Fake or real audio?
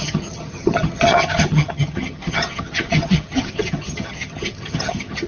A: fake